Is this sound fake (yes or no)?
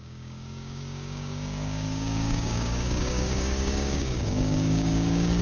yes